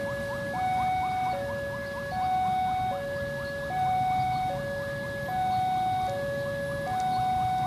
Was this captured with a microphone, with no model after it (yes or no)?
yes